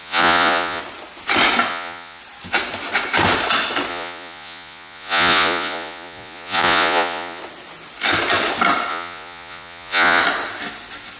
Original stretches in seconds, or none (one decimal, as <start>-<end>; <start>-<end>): 0.8-1.7; 2.2-3.9; 7.4-8.9; 10.2-11.2